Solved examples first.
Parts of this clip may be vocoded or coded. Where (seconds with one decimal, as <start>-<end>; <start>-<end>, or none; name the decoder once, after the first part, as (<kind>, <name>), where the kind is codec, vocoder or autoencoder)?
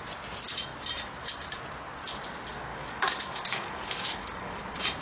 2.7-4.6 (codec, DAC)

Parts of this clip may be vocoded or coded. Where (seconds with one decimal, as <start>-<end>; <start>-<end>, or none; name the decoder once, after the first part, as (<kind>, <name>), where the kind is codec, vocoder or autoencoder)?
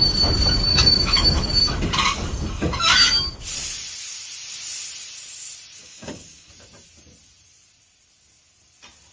0.7-3.4 (codec, DAC); 5.8-6.5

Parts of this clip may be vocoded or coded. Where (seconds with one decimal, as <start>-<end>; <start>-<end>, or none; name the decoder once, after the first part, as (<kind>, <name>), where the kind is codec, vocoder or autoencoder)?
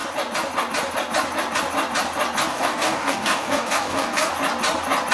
2.5-4.3 (codec, DAC)